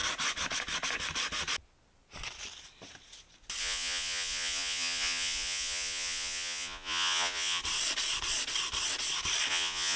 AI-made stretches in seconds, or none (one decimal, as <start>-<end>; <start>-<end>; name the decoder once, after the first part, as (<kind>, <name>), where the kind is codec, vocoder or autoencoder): 3.6-7.6 (vocoder, Vocos); 9.5-10.0